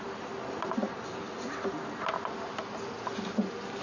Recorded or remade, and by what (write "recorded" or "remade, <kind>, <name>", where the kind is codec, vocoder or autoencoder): recorded